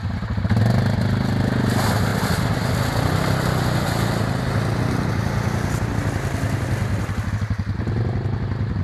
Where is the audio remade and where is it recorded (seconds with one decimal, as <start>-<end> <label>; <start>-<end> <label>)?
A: 0.0-8.8 recorded